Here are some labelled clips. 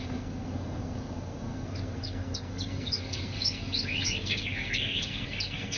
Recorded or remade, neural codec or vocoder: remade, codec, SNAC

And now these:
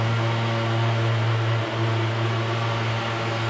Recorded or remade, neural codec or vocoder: recorded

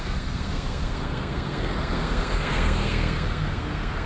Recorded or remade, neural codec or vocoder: remade, codec, SNAC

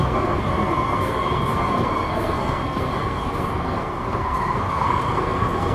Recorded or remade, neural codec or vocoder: remade, codec, SNAC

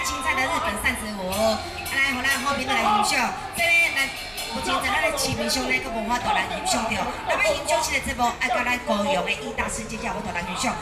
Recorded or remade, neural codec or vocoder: recorded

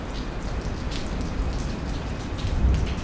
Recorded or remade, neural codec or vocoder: recorded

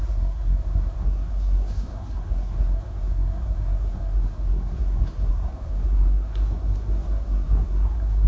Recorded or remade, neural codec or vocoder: remade, codec, SNAC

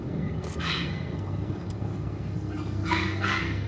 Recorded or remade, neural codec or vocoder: remade, codec, SNAC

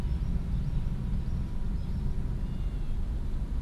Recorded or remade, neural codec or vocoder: recorded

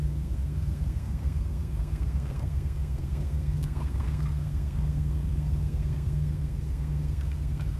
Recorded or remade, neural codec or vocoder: remade, codec, SNAC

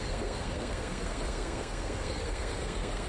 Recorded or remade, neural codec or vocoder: remade, codec, SNAC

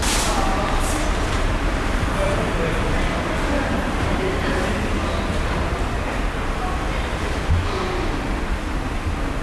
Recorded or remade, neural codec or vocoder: recorded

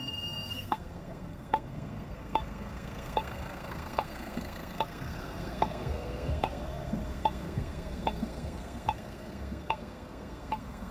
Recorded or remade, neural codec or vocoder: remade, codec, SNAC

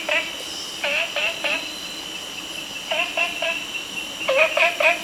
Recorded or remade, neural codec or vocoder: recorded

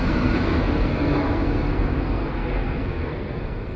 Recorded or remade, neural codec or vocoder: remade, codec, SNAC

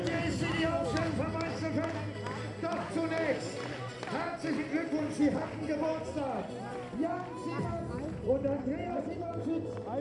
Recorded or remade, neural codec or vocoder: recorded